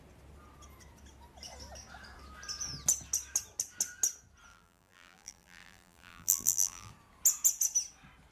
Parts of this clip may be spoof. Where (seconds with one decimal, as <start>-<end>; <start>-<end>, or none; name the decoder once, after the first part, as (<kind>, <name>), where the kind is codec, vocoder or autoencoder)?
4.5-6.9 (vocoder, BigVGAN v2)